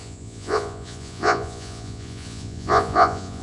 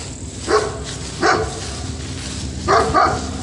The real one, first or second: second